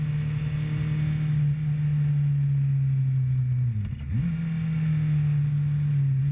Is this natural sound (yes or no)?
yes